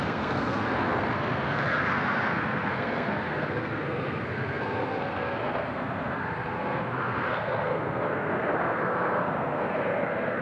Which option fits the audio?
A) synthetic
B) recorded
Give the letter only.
A